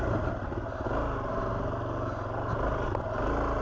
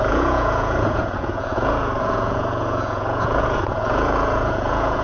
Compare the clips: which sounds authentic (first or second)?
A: first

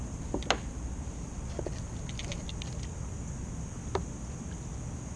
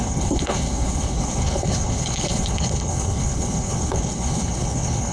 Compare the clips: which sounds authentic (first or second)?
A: first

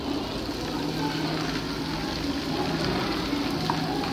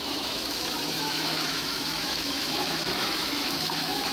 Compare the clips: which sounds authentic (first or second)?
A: first